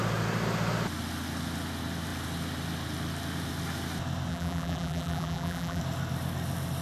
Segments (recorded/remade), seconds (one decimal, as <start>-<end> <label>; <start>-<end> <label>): 0.0-4.3 recorded; 4.3-5.8 remade; 5.8-6.8 recorded